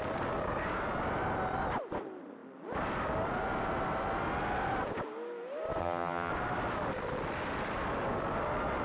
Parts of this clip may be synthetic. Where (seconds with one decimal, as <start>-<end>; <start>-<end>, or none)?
5.8-6.3